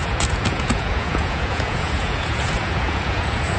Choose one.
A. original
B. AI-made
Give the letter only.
B